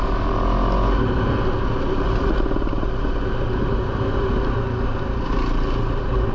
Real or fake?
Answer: real